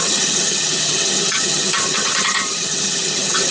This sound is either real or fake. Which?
fake